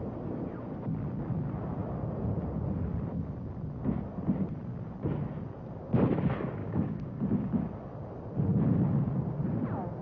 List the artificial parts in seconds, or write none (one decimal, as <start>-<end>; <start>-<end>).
6.6-7.2